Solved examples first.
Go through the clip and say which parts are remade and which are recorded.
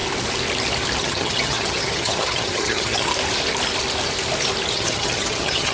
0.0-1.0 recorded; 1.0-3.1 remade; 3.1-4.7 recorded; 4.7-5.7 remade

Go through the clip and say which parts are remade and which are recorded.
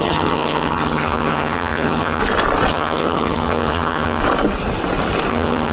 0.0-2.2 remade; 2.2-2.7 recorded; 2.7-4.2 remade; 4.2-5.3 recorded; 5.3-5.7 remade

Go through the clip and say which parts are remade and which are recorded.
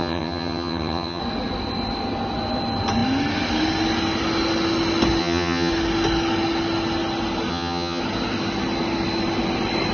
0.0-1.2 remade; 1.2-5.2 recorded; 5.2-5.7 remade; 5.7-7.5 recorded; 7.5-8.0 remade; 8.0-9.9 recorded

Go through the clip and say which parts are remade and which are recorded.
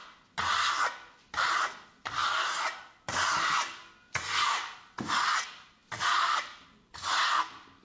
0.0-7.8 recorded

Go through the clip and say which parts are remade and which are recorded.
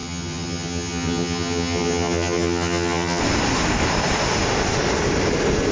0.0-3.2 remade; 3.2-5.7 recorded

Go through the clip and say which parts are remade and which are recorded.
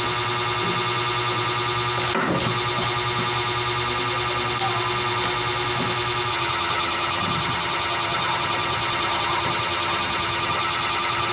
0.0-6.3 recorded; 6.3-11.3 remade